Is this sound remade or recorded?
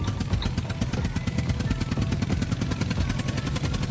recorded